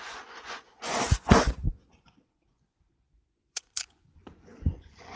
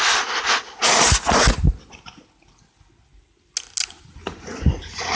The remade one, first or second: first